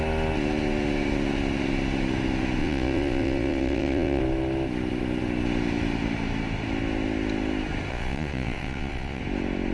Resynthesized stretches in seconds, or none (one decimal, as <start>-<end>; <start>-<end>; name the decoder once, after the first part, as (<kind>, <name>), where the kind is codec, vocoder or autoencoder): 2.6-4.2 (vocoder, Vocos); 7.9-9.2